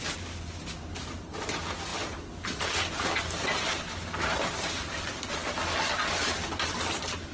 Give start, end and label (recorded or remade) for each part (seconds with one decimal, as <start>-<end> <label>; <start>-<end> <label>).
0.0-7.3 recorded